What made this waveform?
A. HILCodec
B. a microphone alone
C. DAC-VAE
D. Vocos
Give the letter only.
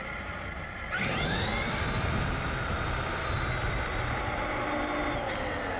B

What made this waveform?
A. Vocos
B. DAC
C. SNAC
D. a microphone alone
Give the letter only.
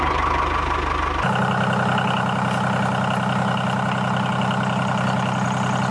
D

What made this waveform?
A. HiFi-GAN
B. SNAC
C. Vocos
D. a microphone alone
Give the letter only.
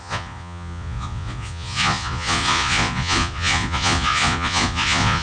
C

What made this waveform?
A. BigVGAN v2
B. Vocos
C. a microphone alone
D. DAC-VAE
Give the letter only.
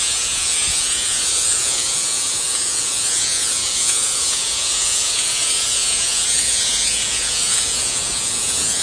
B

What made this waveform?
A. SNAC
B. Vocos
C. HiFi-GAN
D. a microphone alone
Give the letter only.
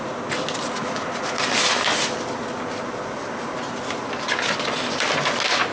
D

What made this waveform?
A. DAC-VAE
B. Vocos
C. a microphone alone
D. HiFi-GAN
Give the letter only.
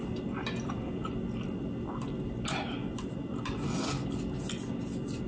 C